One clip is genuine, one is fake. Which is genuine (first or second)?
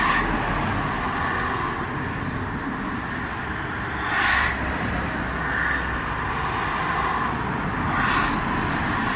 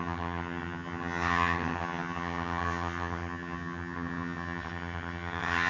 first